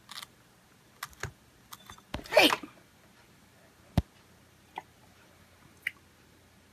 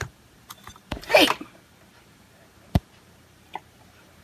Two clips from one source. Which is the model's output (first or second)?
second